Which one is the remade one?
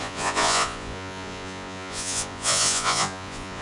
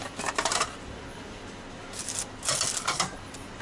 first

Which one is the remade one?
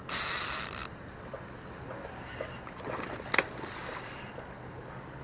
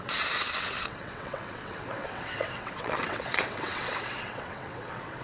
second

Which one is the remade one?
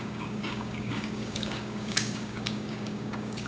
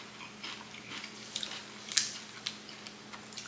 first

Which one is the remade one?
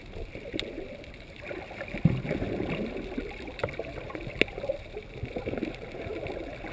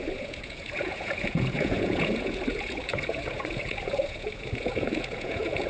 second